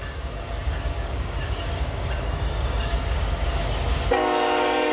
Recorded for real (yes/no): no